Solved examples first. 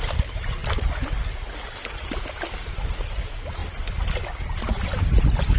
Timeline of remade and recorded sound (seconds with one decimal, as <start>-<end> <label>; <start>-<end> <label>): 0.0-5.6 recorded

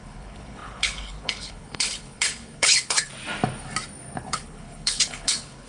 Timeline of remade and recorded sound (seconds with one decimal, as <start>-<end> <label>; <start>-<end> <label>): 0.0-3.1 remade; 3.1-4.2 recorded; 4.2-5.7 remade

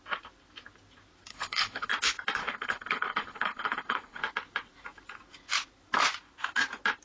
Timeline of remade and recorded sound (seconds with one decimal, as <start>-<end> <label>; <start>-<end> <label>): 0.0-1.3 recorded; 1.3-1.9 remade; 1.9-2.4 recorded; 2.4-4.2 remade; 4.2-7.0 recorded

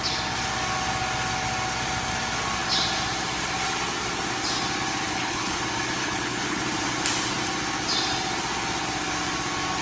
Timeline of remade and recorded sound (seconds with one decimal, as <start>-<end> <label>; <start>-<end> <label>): 0.0-5.1 recorded; 5.1-5.6 remade; 5.6-6.0 recorded; 6.0-6.6 remade; 6.6-9.8 recorded

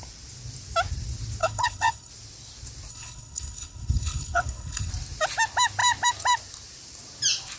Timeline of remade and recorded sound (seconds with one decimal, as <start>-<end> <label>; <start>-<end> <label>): 0.0-1.4 recorded; 1.4-2.1 remade; 2.1-2.9 recorded; 2.9-4.9 remade; 4.9-7.6 recorded

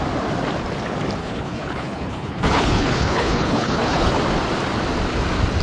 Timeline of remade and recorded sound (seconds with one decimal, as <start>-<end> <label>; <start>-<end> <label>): 0.0-1.2 recorded; 1.2-4.1 remade; 4.1-5.6 recorded

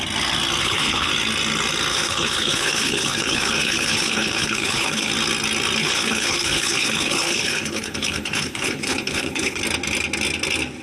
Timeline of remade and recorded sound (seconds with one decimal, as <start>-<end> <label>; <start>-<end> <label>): 0.0-0.6 recorded; 0.6-1.1 remade; 1.1-1.9 recorded; 1.9-5.1 remade; 5.1-5.8 recorded; 5.8-9.6 remade; 9.6-10.8 recorded

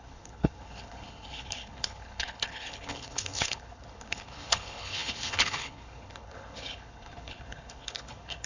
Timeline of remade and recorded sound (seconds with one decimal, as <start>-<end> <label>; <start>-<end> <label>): 0.0-8.5 remade